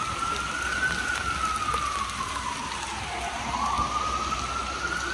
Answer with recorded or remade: recorded